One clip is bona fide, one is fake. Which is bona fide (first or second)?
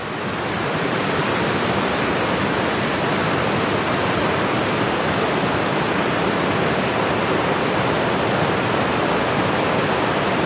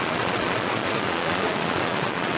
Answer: first